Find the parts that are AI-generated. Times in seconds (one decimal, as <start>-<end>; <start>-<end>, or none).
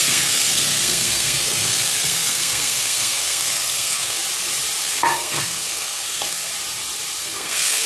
0.0-4.2; 4.8-6.5; 7.2-7.9